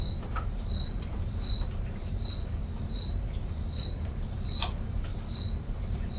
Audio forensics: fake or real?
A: fake